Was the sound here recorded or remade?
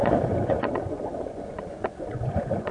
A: remade